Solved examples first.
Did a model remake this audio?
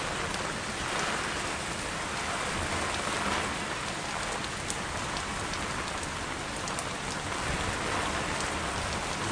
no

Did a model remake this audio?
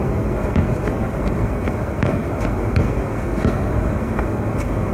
yes